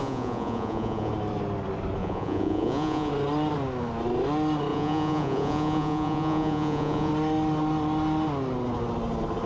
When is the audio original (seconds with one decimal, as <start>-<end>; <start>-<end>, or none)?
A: 1.1-2.0; 3.1-4.7; 7.1-9.5